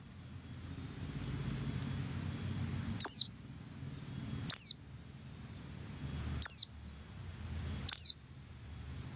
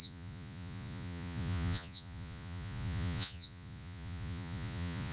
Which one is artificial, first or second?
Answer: second